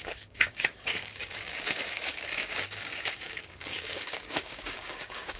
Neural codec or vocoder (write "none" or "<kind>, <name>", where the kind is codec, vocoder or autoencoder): codec, DAC